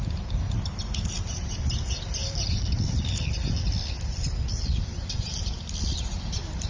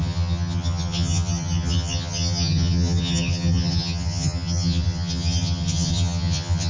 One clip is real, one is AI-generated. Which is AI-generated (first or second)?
second